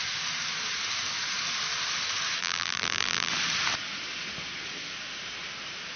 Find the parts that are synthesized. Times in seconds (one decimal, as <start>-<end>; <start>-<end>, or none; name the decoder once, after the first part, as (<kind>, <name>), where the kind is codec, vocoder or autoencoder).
2.4-3.3 (vocoder, BigVGAN v2)